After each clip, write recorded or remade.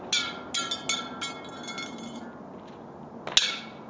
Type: recorded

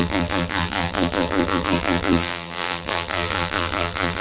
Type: remade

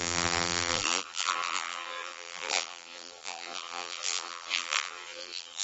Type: remade